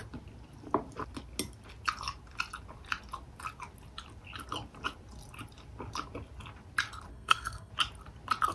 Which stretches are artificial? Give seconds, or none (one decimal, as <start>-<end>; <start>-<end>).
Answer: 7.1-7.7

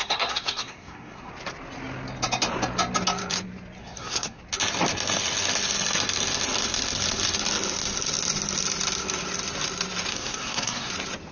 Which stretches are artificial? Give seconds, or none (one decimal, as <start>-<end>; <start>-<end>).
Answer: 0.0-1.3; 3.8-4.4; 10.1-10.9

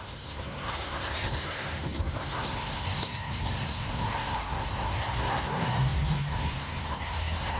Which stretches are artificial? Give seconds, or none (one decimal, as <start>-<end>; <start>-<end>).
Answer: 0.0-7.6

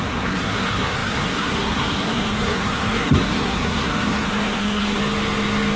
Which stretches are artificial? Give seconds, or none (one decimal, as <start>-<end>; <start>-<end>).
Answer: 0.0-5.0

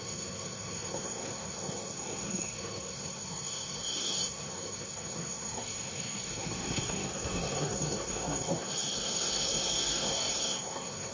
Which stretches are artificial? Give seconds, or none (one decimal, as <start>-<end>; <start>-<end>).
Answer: 0.0-11.1

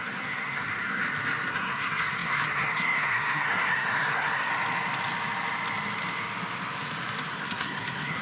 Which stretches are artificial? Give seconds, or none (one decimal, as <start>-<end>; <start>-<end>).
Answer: 0.0-1.0; 1.5-4.5; 7.3-8.2